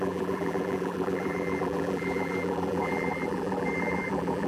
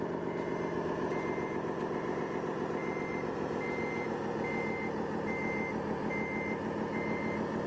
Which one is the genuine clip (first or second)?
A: second